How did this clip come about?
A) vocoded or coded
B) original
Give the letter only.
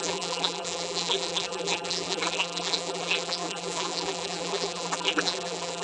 A